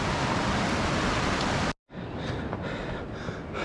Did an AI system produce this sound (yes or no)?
no